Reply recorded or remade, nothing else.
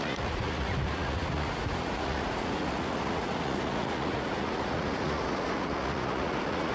remade